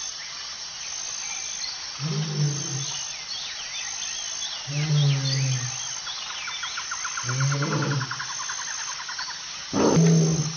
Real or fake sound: real